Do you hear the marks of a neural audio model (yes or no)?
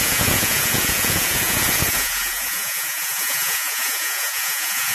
yes